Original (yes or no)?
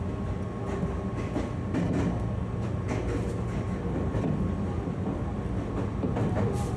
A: yes